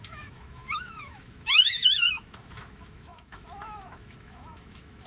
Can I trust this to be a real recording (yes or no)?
no